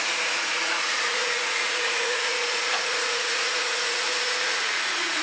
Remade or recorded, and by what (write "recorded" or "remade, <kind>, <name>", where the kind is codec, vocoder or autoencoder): remade, vocoder, Vocos